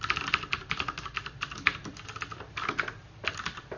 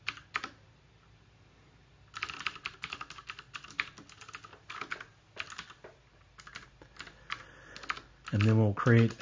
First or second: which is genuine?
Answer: second